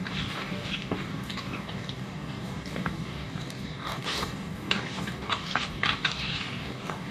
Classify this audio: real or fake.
fake